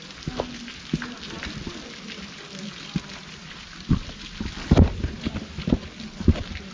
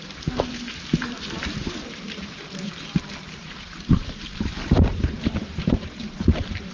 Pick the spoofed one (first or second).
second